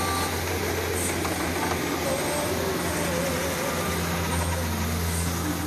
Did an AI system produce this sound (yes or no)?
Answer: no